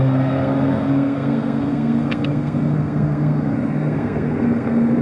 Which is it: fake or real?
fake